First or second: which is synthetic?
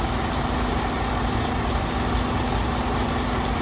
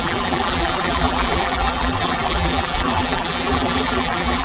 second